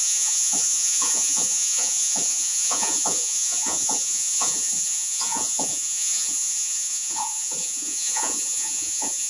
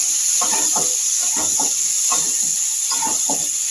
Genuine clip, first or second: second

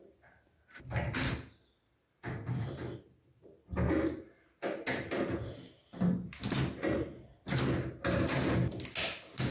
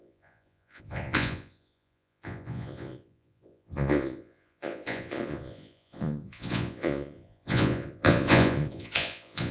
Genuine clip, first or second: first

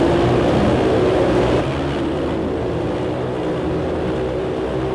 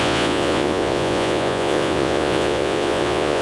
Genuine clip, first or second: first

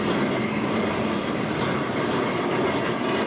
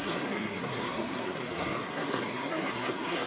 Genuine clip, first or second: first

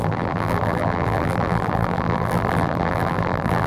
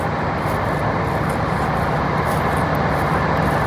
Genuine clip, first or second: second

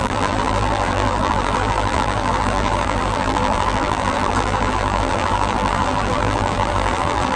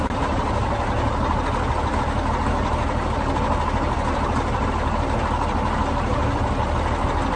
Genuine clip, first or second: second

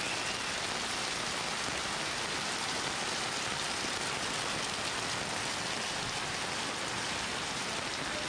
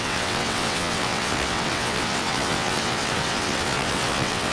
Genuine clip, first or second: first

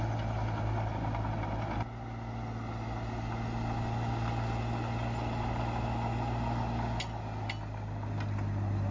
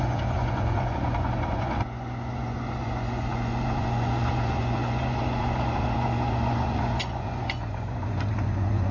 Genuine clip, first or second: first